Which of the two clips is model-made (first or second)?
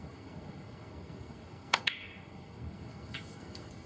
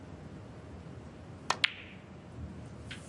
first